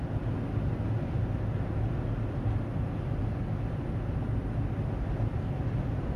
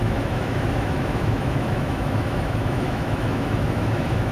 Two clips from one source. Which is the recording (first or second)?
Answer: first